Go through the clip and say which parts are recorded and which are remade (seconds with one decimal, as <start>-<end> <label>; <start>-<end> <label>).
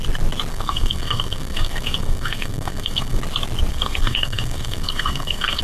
0.0-0.5 recorded; 0.5-3.2 remade; 3.2-3.7 recorded; 3.7-5.6 remade